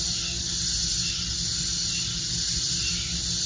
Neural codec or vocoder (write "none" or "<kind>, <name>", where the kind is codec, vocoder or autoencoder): none